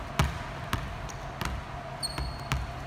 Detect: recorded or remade recorded